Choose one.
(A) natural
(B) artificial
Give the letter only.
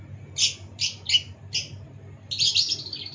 A